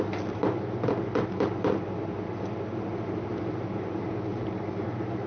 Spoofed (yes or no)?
no